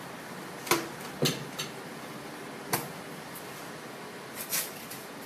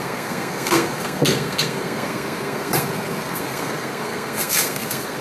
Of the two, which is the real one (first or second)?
first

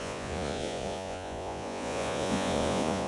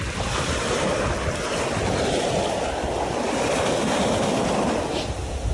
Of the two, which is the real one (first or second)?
second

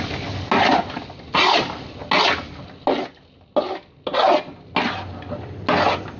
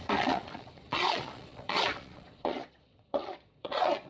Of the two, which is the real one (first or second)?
first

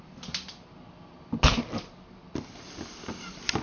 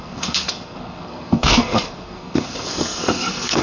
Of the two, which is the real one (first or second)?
first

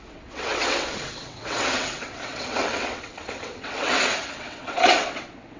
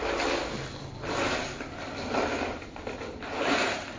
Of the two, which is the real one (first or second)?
second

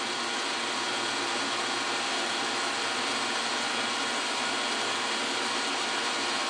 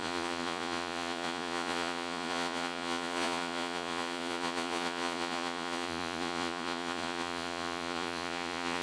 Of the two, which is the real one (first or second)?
first